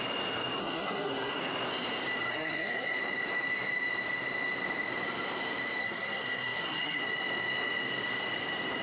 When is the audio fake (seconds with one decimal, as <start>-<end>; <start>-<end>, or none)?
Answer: 0.6-1.4; 2.3-3.0; 5.8-7.0